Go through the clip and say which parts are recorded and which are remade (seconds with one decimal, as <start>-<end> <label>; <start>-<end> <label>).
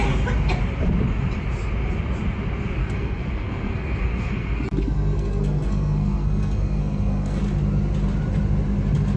0.0-2.8 recorded; 2.8-7.4 remade; 7.4-9.2 recorded